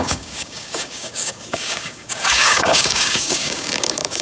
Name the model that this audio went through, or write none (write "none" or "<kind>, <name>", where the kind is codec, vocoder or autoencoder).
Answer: codec, DAC